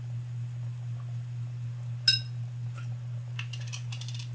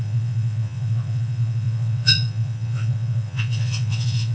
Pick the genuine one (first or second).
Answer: first